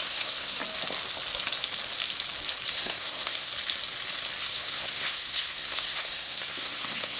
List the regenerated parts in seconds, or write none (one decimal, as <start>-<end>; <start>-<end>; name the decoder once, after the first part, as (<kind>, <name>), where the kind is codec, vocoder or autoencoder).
0.0-0.6 (codec, SNAC); 2.7-3.5; 4.4-7.2